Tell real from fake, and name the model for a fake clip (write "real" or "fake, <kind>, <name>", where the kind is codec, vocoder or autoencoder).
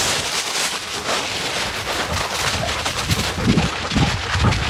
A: real